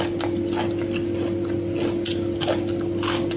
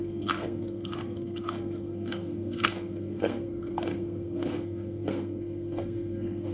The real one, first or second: first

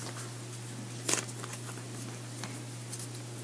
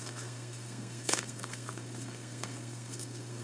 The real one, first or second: first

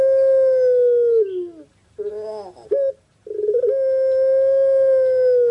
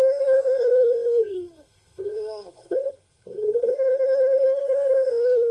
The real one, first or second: first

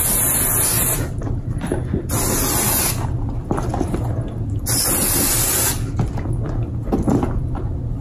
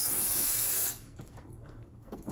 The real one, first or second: first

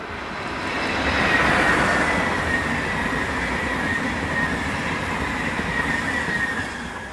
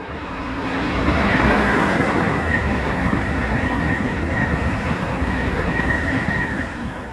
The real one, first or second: first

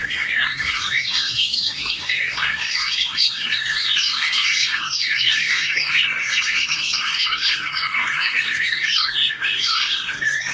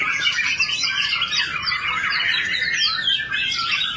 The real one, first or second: second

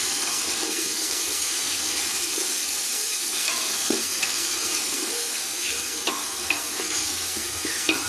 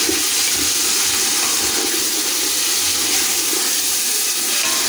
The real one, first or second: second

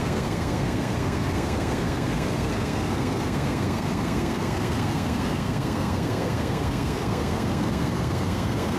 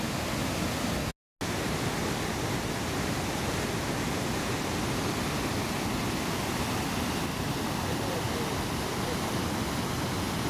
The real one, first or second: second